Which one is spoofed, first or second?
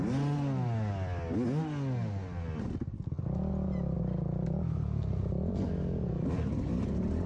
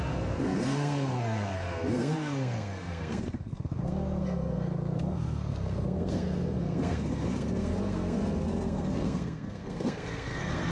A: second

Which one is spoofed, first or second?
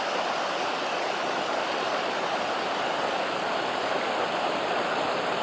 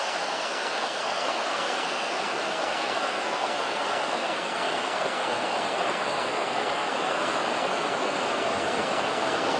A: second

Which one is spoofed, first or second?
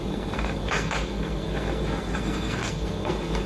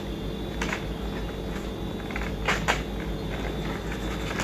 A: first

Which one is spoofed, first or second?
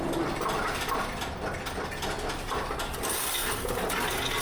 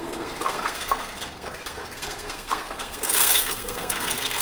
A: second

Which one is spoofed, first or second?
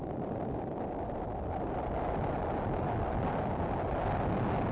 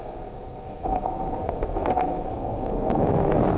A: second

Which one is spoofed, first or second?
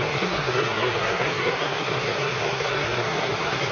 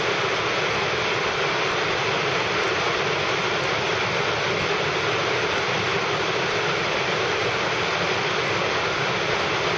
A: first